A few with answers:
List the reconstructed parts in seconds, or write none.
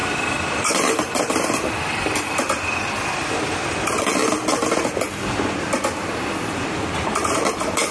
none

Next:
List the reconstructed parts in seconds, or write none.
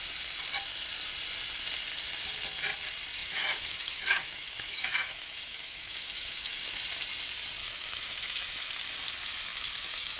3.2-6.8 (autoencoder, DAC-VAE); 7.6-8.7; 9.5-10.2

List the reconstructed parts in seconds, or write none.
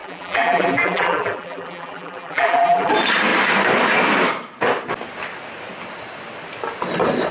0.0-2.9 (vocoder, BigVGAN v2)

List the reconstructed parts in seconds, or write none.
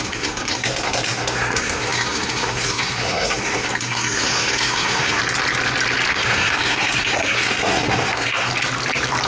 0.0-5.2 (codec, SNAC); 6.1-8.5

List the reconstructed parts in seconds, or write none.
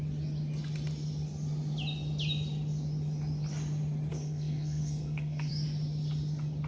4.1-5.5 (codec, SNAC)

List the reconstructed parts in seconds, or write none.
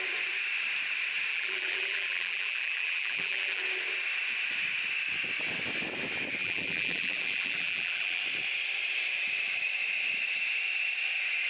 1.3-3.6 (vocoder, BigVGAN v2); 6.4-8.2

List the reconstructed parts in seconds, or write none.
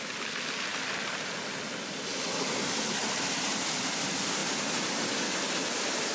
none